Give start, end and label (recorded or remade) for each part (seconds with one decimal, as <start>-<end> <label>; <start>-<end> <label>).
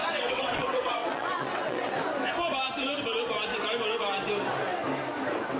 0.0-1.9 remade; 1.9-5.6 recorded